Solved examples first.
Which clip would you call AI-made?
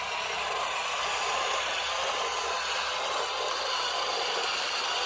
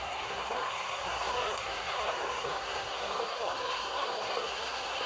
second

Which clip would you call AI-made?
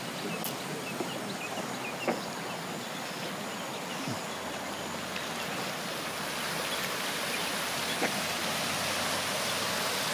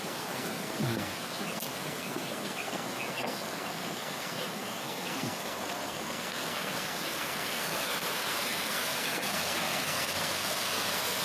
second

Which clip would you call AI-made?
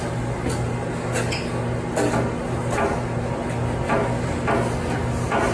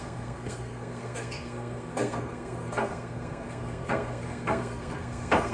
second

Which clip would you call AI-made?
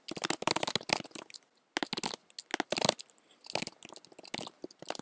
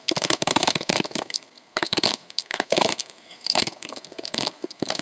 second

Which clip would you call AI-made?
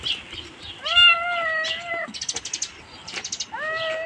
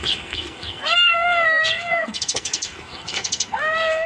second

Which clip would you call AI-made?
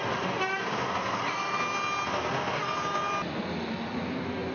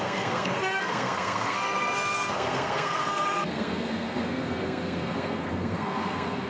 second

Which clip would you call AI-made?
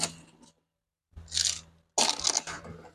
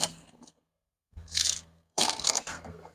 second